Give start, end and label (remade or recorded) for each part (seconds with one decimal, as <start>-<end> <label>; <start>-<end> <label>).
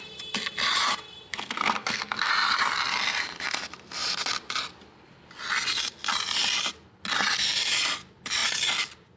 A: 0.0-1.3 recorded; 1.3-2.3 remade; 2.3-9.2 recorded